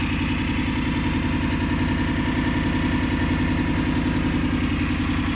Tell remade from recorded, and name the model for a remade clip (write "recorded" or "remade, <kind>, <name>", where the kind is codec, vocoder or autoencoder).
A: recorded